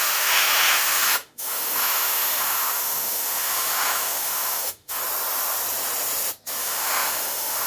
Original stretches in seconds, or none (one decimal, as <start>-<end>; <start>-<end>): 5.0-6.6